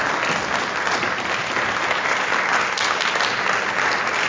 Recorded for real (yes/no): yes